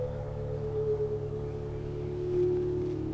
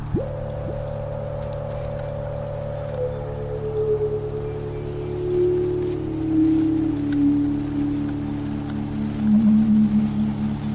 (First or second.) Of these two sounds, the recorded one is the second